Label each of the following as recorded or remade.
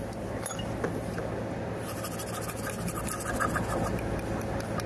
recorded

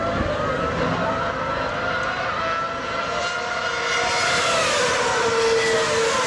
recorded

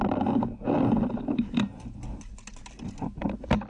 recorded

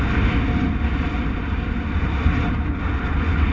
recorded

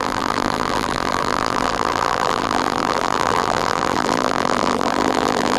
remade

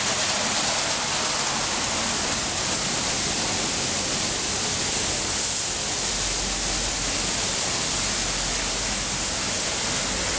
recorded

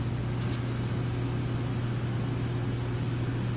recorded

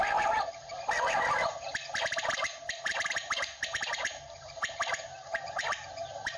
remade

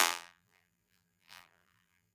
remade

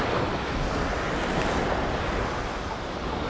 recorded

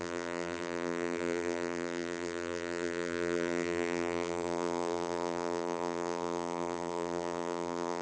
remade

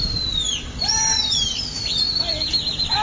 remade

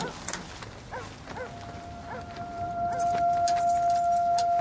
recorded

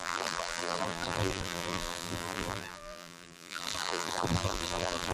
remade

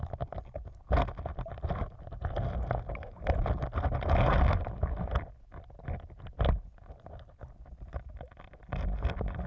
recorded